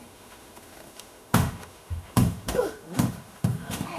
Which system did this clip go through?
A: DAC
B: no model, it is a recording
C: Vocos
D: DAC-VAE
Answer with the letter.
D